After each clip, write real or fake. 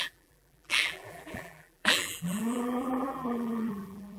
fake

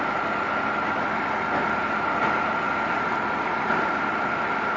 real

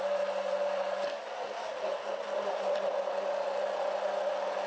real